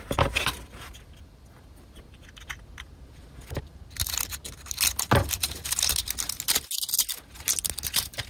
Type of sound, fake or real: real